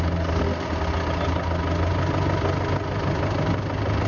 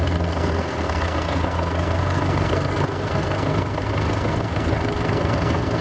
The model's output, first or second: second